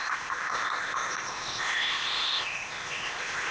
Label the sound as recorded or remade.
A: remade